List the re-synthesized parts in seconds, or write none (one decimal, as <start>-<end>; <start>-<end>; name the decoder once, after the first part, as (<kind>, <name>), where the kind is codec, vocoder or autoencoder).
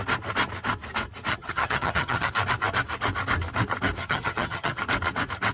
1.3-2.3 (vocoder, HiFi-GAN); 4.0-4.8